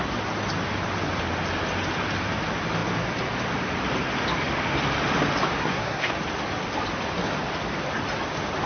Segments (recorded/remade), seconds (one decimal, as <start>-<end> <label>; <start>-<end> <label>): 0.0-5.6 recorded; 5.6-6.1 remade; 6.1-8.7 recorded